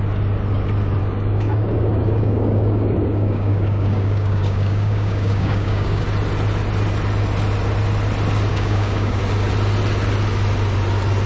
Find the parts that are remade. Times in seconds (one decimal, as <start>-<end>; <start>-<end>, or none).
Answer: 1.0-6.0; 8.5-9.2